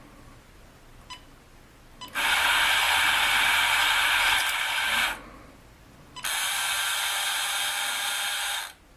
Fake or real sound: real